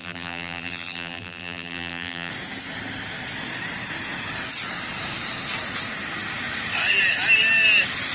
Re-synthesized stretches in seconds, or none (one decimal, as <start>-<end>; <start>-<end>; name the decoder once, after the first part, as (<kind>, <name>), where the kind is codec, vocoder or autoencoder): 0.0-2.3 (vocoder, BigVGAN v2)